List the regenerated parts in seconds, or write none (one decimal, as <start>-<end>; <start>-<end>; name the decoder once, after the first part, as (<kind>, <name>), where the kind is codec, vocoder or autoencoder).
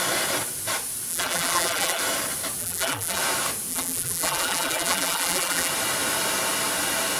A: 1.1-2.0 (vocoder, BigVGAN v2); 2.6-3.2; 3.7-5.7